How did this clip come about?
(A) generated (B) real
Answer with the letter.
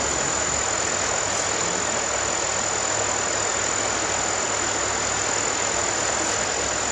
B